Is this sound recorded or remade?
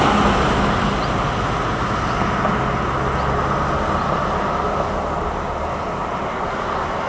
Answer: recorded